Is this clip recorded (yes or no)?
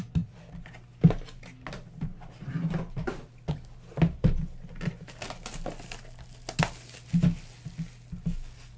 yes